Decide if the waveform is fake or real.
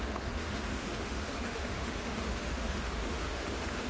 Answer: fake